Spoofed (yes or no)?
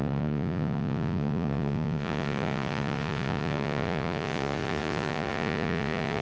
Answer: yes